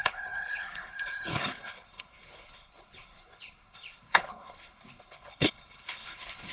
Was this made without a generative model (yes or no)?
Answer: no